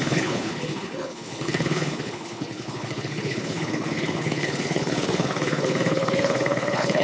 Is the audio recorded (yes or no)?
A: no